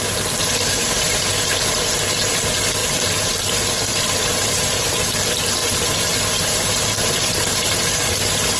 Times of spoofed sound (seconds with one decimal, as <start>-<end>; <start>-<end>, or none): 0.4-2.4; 2.8-3.4; 3.9-4.8; 5.6-7.7